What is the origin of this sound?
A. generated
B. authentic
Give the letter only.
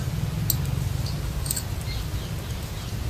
B